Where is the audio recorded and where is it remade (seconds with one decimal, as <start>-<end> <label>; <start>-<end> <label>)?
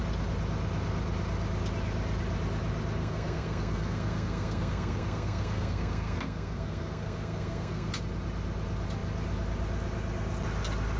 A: 0.0-3.0 recorded; 3.0-7.9 remade; 7.9-11.0 recorded